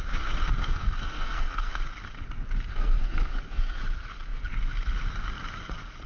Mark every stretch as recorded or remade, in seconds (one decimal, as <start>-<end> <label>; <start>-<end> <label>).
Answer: 0.0-0.6 recorded; 0.6-1.7 remade; 1.7-2.7 recorded; 2.7-3.8 remade; 3.8-6.1 recorded